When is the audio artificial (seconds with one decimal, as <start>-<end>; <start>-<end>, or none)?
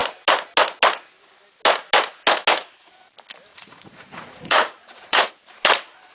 3.5-5.3